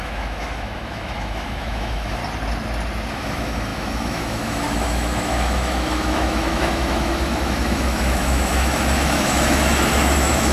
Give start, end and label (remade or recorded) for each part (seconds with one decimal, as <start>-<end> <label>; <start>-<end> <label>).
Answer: 0.0-2.2 remade; 2.2-3.1 recorded; 3.1-10.5 remade